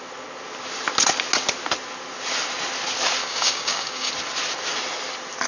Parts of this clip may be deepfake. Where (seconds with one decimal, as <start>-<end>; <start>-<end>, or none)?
3.2-4.1